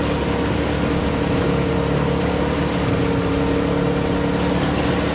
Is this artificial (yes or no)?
no